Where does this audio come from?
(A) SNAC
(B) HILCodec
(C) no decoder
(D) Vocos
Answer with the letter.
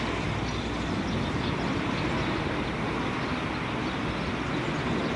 C